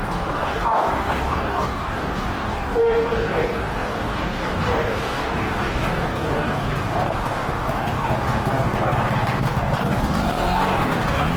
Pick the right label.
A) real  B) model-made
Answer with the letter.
B